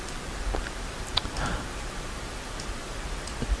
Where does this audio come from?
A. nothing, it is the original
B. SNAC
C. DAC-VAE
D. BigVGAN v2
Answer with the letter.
D